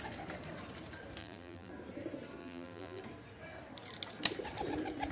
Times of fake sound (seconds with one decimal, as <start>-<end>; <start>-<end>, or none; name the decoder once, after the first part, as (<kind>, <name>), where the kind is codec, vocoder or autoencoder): 1.2-1.7 (vocoder, BigVGAN v2); 2.4-3.0